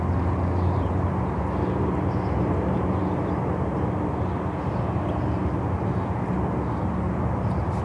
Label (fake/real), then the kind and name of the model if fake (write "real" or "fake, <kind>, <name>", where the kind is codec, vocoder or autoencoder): real